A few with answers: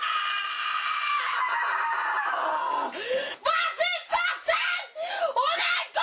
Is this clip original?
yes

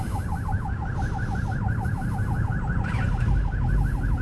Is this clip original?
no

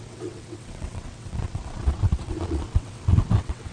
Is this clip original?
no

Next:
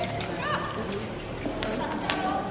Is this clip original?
yes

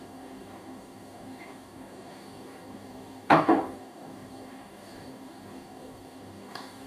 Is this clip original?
no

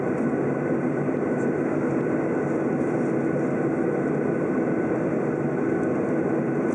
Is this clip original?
yes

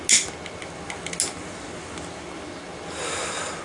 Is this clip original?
yes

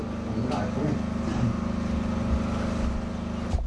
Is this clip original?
yes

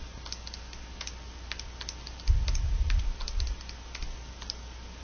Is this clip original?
yes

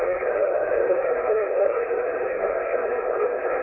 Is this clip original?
no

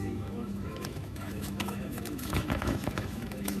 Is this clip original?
no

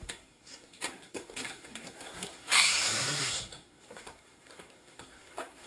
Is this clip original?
no